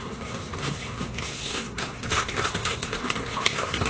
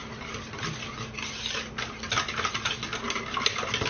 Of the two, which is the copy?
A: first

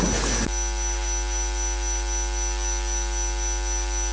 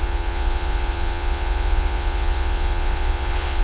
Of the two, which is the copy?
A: second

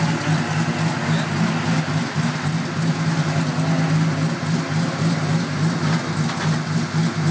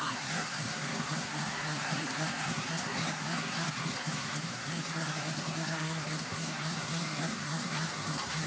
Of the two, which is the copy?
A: second